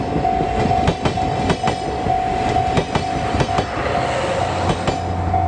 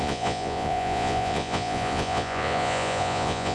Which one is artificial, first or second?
second